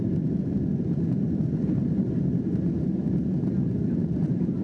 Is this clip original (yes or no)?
no